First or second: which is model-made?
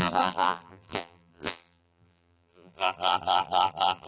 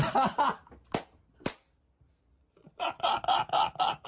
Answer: first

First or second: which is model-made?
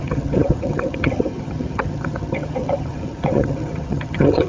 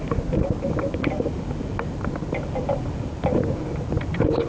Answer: first